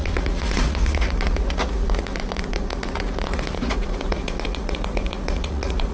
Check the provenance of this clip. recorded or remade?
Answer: remade